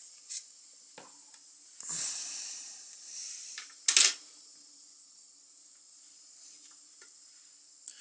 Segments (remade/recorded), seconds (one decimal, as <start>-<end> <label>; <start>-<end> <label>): 0.0-8.0 recorded